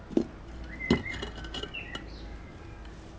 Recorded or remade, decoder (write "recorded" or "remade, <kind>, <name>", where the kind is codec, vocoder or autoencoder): recorded